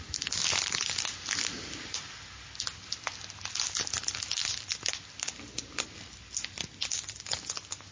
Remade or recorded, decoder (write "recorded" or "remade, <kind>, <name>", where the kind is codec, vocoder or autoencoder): recorded